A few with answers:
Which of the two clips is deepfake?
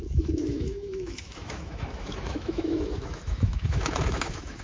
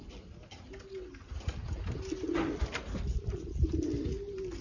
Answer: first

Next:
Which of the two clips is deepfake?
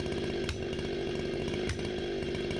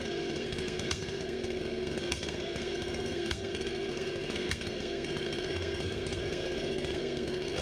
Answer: second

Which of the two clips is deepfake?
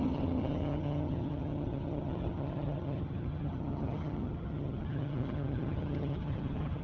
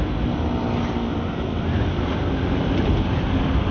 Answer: first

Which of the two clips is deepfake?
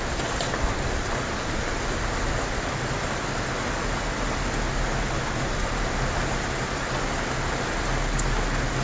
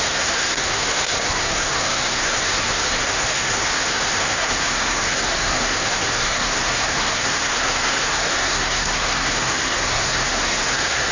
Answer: second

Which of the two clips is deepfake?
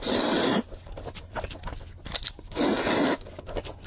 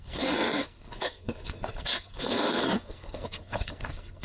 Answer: second